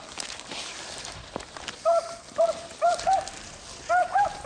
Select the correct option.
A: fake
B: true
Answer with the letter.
B